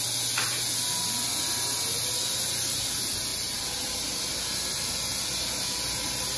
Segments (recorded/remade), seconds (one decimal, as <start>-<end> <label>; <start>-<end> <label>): 0.0-6.4 recorded